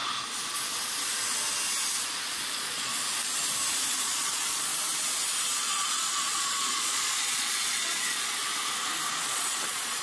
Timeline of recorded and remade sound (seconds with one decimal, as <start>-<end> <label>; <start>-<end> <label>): 0.0-2.2 recorded; 2.2-2.9 remade; 2.9-4.0 recorded; 4.0-4.7 remade; 4.7-5.6 recorded; 5.6-8.4 remade; 8.4-9.1 recorded; 9.1-10.0 remade